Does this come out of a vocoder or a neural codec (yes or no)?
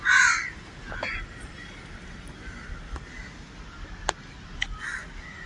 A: no